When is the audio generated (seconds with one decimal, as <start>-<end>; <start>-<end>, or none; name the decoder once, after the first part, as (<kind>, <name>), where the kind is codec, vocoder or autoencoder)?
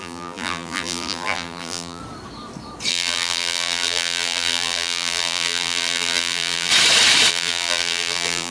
0.0-2.0 (vocoder, BigVGAN v2); 2.9-6.7; 7.3-8.5